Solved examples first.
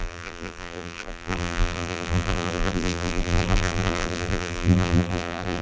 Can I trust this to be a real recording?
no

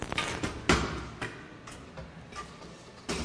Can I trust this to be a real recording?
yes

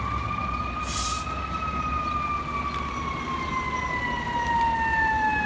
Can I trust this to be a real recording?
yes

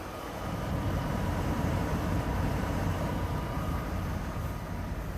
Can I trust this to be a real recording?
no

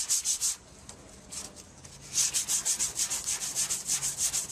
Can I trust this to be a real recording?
yes